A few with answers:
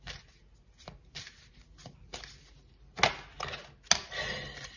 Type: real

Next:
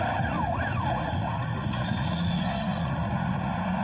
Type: fake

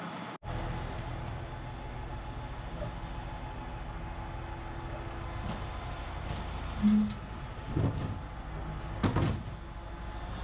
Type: real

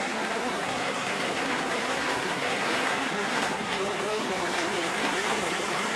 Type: fake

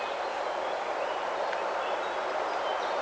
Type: real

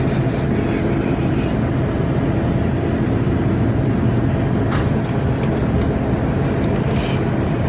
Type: real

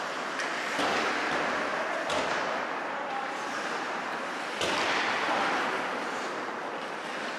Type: real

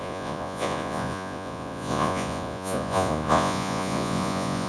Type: fake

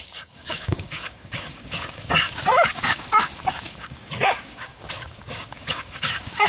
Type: fake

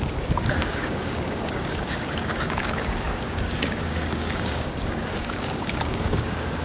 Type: fake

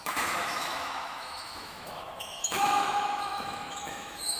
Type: fake